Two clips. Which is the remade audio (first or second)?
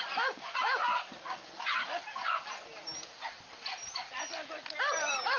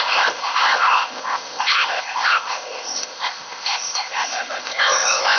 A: second